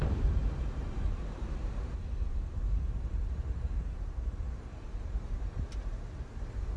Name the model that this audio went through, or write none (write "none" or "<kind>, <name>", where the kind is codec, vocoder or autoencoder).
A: vocoder, BigVGAN v2